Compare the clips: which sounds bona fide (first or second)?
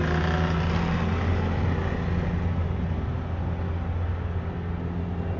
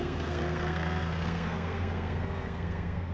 first